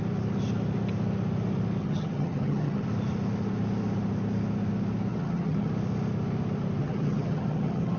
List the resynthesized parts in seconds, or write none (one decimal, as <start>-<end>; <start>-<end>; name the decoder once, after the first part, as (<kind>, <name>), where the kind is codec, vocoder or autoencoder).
1.8-2.9 (vocoder, HiFi-GAN); 5.1-5.7; 6.8-8.0